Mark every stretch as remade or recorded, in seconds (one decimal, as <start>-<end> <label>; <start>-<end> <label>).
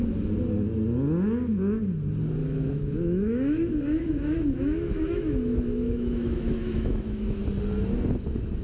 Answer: 0.0-2.4 recorded; 2.4-7.4 remade; 7.4-8.6 recorded